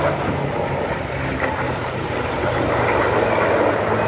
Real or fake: real